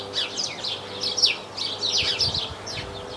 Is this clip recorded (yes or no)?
yes